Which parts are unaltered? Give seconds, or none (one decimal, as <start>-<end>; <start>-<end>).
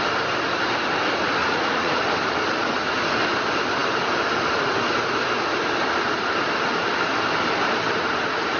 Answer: 0.0-1.4; 2.0-8.6